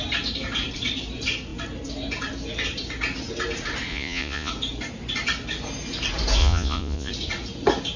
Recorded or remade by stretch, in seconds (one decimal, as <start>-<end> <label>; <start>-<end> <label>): 0.0-3.9 recorded; 3.9-4.5 remade; 4.5-6.4 recorded; 6.4-7.1 remade; 7.1-8.0 recorded